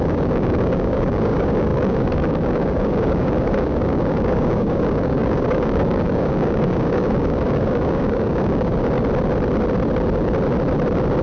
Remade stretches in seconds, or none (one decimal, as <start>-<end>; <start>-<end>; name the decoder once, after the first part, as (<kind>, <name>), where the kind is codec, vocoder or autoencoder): 0.0-8.7 (codec, DAC)